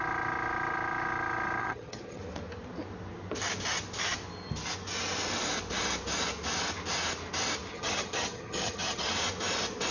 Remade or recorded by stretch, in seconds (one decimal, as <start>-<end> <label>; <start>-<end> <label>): 0.0-1.6 recorded; 1.6-2.2 remade; 2.2-7.7 recorded; 7.7-9.1 remade; 9.1-9.9 recorded